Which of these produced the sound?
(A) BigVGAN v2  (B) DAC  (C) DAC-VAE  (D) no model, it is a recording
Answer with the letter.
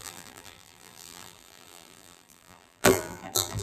A